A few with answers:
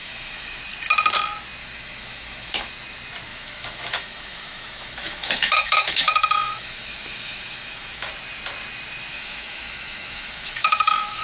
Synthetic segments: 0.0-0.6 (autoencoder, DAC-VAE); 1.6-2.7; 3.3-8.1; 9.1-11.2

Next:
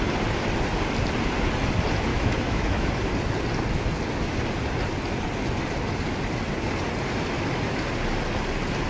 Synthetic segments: 2.1-2.9 (autoencoder, DAC-VAE)

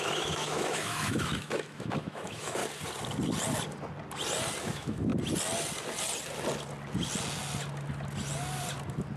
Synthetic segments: 0.0-2.6 (autoencoder, DAC-VAE); 4.6-5.1

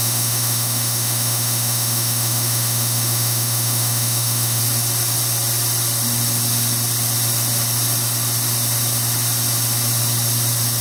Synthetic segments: 0.0-4.6 (autoencoder, DAC-VAE)

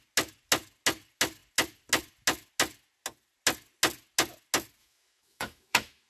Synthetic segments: 4.8-6.1 (autoencoder, DAC-VAE)